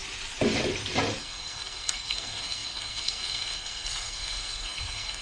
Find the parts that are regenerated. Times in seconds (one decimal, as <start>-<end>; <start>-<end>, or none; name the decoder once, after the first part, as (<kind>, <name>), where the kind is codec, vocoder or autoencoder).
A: 1.2-5.2 (codec, SNAC)